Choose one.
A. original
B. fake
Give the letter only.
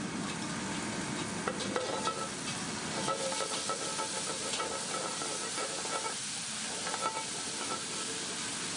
A